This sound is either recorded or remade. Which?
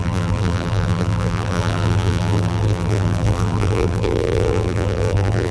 remade